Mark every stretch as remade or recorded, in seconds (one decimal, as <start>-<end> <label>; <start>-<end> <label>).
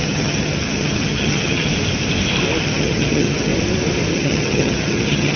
0.0-1.7 remade; 1.7-2.6 recorded; 2.6-3.5 remade; 3.5-4.1 recorded; 4.1-5.4 remade